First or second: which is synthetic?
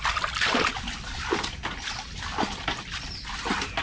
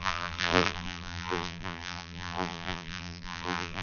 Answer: second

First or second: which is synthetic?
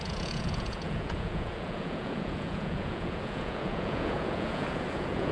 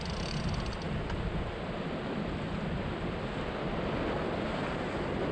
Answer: first